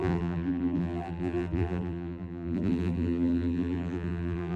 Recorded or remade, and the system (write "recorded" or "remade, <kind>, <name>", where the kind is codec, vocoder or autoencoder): remade, vocoder, BigVGAN v2